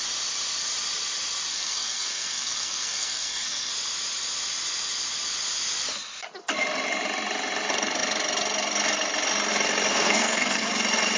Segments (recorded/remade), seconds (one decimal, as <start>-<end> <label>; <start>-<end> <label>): 0.0-1.5 recorded; 1.5-3.7 remade; 3.7-9.9 recorded; 9.9-10.7 remade; 10.7-11.2 recorded